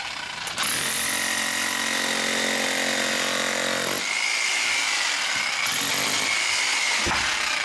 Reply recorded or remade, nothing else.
recorded